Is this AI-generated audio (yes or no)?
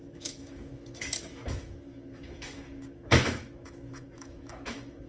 yes